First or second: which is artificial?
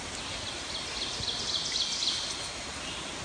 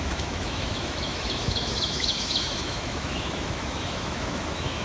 second